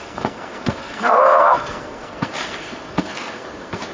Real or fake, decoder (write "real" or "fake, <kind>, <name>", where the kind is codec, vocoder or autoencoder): fake, codec, SNAC